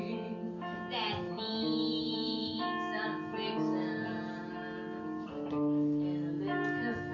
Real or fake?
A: real